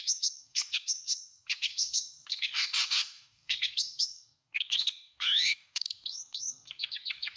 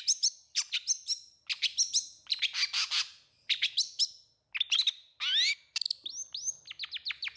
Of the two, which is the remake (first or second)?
first